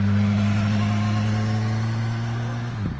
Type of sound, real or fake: real